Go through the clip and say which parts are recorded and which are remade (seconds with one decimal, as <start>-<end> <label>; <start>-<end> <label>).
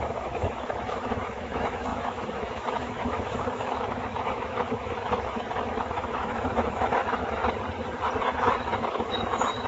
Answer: 0.0-7.4 remade; 7.4-8.2 recorded; 8.2-9.7 remade